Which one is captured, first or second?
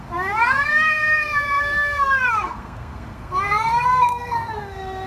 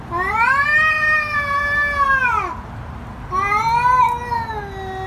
second